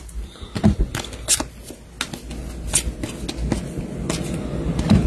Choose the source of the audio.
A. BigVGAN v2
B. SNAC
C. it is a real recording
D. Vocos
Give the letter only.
C